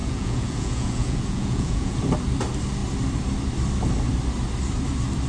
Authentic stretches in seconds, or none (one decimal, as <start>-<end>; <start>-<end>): 2.0-5.3